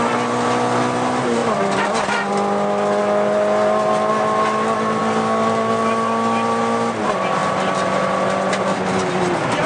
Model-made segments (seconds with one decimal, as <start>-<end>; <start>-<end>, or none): 1.4-2.3